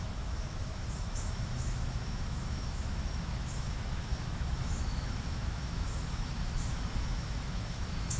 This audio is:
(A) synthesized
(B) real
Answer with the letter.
A